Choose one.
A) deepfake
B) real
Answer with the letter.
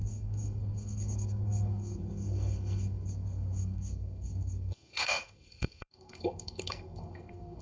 A